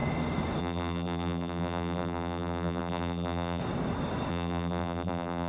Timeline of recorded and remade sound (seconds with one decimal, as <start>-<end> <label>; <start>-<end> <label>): 0.0-0.6 recorded; 0.6-3.6 remade; 3.6-4.3 recorded; 4.3-5.5 remade

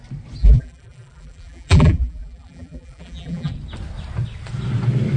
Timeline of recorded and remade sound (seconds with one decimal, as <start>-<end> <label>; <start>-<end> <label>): 0.0-0.4 recorded; 0.4-3.5 remade; 3.5-5.2 recorded

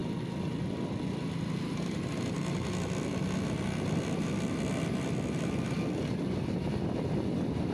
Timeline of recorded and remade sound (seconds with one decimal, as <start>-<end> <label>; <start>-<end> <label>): 0.0-7.7 recorded

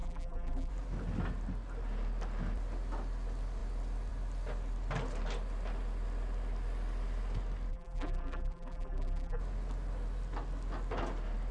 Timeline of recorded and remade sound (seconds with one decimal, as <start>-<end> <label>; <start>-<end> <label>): 0.0-0.7 remade; 0.7-7.7 recorded; 7.7-9.4 remade; 9.4-11.5 recorded

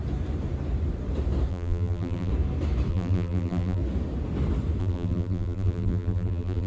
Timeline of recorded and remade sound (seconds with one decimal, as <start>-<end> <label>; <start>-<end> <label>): 0.0-1.5 recorded; 1.5-2.3 remade; 2.3-2.9 recorded; 2.9-3.8 remade; 3.8-4.8 recorded; 4.8-6.7 remade

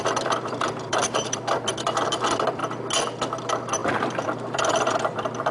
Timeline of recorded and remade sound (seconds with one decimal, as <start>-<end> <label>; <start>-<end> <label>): 0.0-2.6 remade; 2.6-3.4 recorded; 3.4-5.5 remade